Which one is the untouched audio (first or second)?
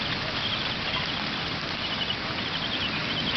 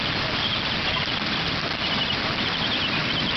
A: first